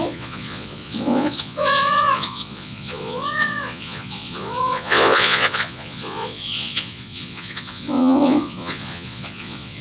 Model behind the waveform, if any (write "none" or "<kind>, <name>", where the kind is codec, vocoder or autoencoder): vocoder, Vocos